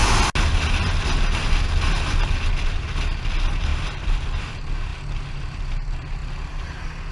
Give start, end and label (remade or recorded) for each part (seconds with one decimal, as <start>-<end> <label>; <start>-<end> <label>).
0.0-3.7 recorded; 3.7-4.4 remade; 4.4-4.9 recorded; 4.9-5.6 remade; 5.6-7.1 recorded